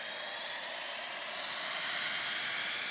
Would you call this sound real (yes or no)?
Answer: yes